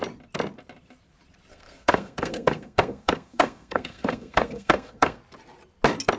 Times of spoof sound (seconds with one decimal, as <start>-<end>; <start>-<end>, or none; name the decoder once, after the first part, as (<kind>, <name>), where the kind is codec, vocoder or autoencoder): 1.5-5.2 (codec, SNAC)